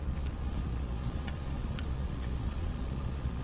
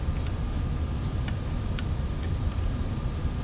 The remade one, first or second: first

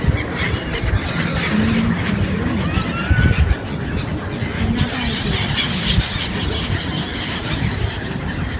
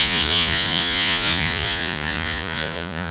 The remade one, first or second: second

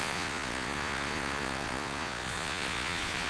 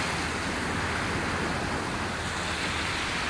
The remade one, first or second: first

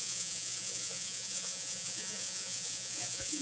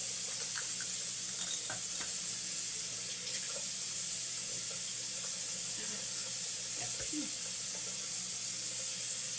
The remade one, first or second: first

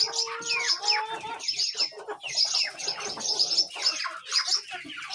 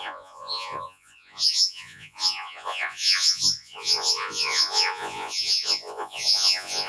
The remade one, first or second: second